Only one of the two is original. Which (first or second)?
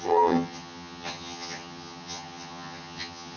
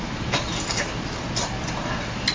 second